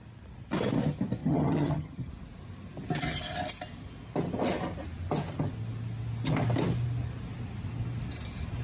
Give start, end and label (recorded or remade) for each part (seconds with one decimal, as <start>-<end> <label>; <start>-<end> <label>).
0.0-1.2 recorded; 1.2-2.1 remade; 2.1-8.6 recorded